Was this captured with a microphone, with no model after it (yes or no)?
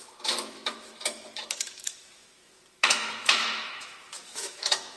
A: no